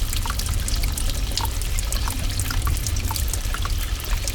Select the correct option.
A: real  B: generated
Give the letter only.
B